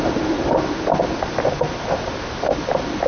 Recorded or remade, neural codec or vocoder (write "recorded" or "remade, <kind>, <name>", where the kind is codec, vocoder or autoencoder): recorded